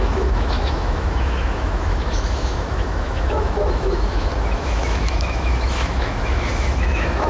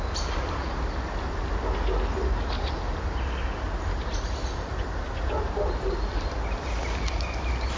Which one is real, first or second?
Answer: second